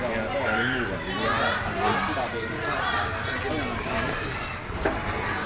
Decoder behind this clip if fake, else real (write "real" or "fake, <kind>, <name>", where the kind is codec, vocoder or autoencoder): real